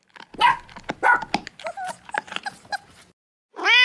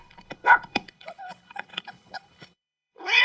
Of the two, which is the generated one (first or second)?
second